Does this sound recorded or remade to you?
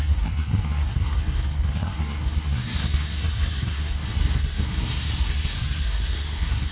remade